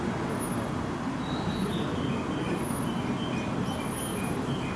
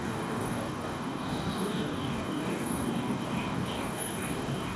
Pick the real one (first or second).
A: first